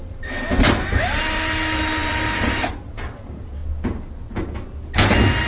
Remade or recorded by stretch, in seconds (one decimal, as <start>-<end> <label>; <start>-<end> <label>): 0.0-3.6 remade; 3.6-5.5 recorded